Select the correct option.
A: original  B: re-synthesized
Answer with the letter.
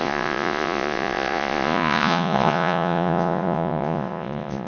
B